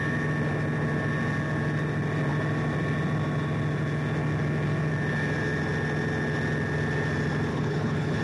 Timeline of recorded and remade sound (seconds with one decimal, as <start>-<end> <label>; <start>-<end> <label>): 0.0-7.5 recorded; 7.5-8.2 remade